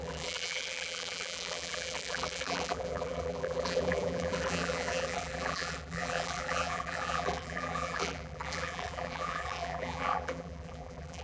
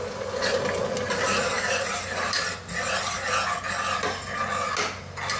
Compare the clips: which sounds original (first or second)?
second